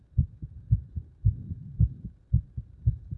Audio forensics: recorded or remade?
remade